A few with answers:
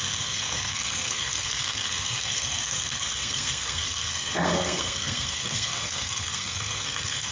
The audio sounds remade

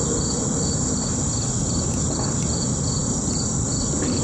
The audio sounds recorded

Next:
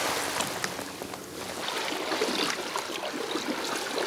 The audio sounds recorded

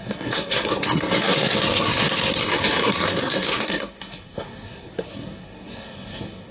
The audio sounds remade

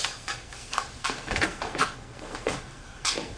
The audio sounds remade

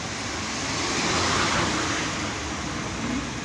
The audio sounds recorded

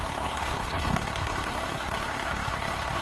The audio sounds remade